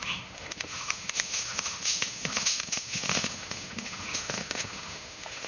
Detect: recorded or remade remade